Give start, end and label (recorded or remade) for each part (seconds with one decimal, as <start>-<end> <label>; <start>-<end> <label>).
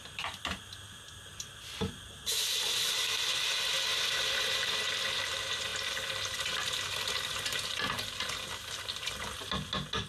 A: 0.0-10.1 recorded